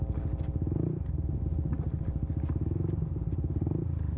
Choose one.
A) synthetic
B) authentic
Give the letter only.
B